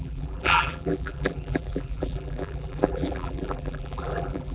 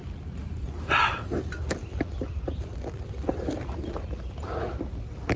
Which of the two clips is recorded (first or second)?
second